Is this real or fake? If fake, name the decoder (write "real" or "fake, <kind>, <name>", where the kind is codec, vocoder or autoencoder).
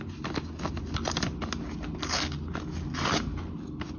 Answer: real